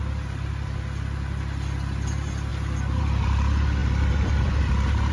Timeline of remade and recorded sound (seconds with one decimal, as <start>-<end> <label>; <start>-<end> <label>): 0.0-5.1 recorded